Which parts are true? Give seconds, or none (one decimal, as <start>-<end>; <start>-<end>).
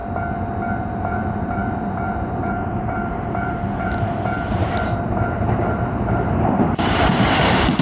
0.0-0.8